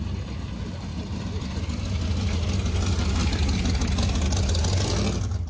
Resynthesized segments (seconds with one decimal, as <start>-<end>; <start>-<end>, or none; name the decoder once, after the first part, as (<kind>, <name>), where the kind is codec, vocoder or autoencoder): 0.9-1.6 (vocoder, BigVGAN v2); 3.2-3.7